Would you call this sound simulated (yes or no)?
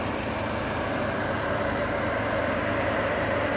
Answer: no